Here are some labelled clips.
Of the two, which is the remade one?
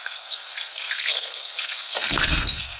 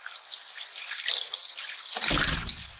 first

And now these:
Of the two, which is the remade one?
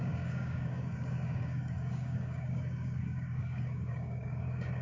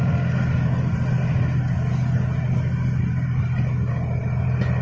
first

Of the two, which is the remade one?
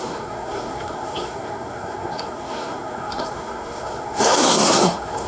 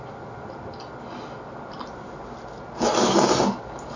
first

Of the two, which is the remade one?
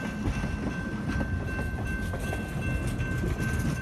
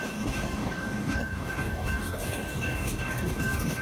second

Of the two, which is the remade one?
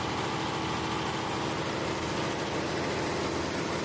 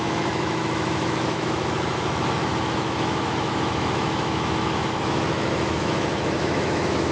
second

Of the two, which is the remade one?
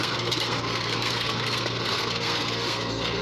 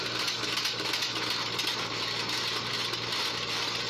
first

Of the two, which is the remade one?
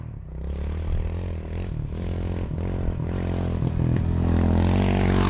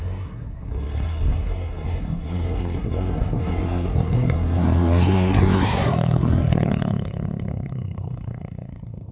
second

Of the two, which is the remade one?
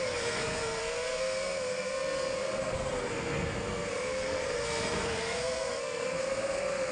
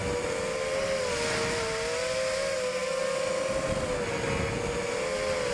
first